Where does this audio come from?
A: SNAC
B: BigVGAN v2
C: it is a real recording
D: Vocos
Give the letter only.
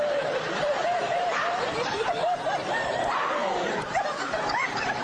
B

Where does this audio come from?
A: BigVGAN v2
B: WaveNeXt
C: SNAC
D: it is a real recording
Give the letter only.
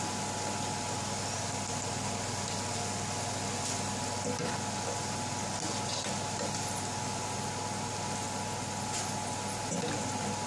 D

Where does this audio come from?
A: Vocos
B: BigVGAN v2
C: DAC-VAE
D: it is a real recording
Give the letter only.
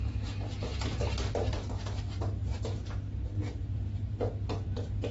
D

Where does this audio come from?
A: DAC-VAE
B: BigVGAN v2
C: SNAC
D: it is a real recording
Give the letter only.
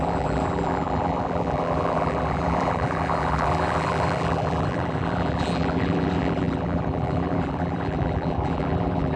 B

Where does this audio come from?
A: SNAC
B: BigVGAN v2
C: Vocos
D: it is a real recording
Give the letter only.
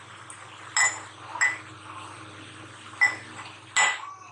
D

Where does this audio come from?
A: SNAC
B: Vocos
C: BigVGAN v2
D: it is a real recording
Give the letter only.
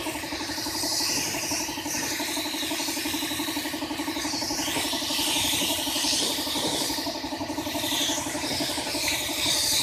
C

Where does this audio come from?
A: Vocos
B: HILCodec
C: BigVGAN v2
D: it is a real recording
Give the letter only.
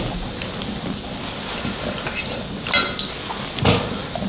D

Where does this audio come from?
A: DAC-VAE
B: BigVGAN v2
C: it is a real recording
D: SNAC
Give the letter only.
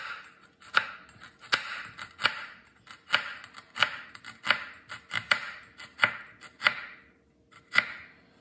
C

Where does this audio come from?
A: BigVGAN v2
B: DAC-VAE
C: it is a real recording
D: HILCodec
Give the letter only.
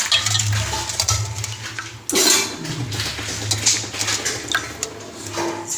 C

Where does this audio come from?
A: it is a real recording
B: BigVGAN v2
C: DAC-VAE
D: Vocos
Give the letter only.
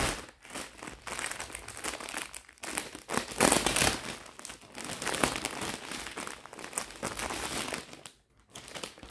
A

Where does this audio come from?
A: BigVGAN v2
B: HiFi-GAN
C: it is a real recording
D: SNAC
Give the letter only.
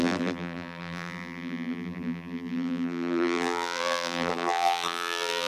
A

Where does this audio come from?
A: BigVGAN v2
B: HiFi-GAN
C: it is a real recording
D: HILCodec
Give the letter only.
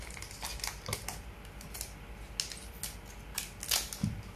C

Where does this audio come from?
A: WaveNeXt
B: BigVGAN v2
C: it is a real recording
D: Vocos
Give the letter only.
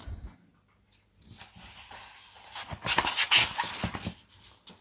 C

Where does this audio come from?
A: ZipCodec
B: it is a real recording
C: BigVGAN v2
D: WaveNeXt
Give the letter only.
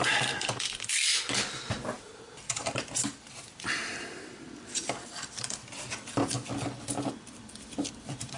C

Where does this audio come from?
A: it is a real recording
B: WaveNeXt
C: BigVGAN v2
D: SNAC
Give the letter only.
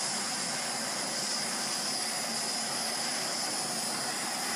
A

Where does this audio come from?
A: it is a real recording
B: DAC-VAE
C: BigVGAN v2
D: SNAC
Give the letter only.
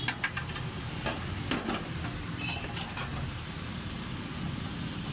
A